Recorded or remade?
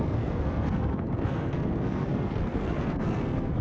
remade